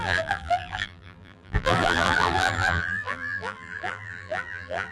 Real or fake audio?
fake